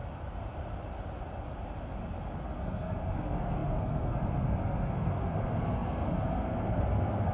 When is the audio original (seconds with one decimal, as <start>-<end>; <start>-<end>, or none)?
0.0-2.4